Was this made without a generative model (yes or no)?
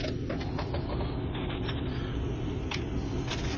yes